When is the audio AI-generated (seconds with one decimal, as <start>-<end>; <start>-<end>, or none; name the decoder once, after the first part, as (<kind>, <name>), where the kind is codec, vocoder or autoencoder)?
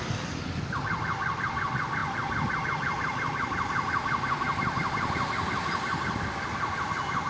none